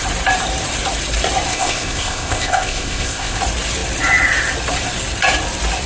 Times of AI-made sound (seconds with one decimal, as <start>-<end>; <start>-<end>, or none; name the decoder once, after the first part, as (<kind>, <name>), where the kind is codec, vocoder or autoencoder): 1.5-3.4 (codec, ZipCodec)